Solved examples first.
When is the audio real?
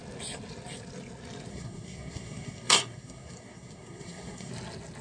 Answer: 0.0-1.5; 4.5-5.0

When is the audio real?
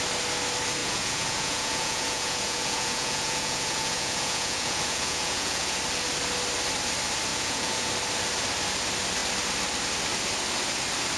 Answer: 0.0-0.8; 5.8-7.3; 7.9-11.2